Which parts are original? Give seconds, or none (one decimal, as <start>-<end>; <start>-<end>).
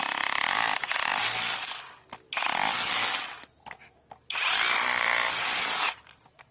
1.1-5.0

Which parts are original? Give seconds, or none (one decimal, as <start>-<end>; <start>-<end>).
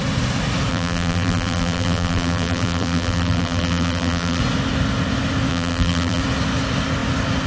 0.0-0.7; 4.4-5.5; 6.2-7.5